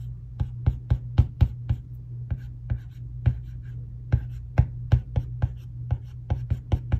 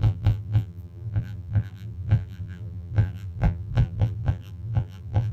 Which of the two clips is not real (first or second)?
second